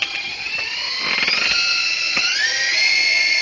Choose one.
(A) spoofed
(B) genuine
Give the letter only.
B